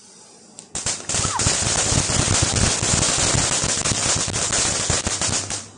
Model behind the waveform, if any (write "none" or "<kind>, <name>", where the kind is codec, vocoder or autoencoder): none